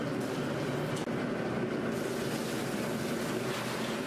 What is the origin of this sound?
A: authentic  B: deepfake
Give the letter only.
A